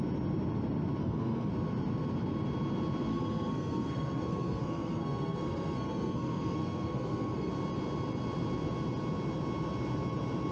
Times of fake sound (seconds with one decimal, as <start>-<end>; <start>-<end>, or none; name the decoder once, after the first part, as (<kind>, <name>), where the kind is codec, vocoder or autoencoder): 1.0-1.5 (codec, SNAC); 3.1-7.5